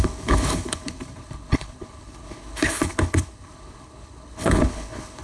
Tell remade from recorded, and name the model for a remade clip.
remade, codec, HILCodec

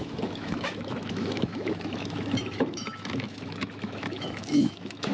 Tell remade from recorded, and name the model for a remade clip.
remade, autoencoder, DAC-VAE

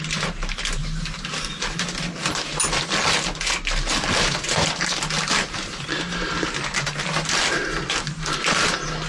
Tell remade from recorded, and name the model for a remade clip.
recorded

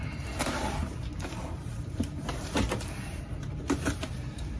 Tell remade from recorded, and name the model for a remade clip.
remade, vocoder, BigVGAN v2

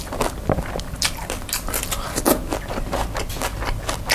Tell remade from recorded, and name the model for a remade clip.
recorded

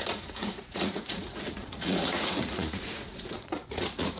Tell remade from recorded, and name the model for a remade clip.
remade, vocoder, Vocos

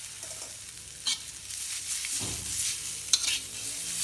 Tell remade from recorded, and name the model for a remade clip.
recorded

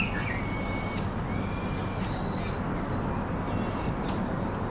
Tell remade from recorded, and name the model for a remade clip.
recorded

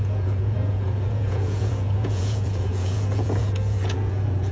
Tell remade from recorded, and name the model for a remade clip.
remade, vocoder, Vocos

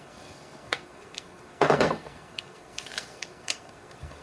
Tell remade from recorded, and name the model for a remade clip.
remade, codec, SNAC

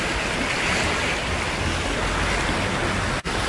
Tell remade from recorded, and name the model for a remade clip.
recorded